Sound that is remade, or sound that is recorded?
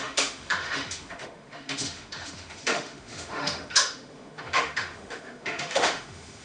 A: remade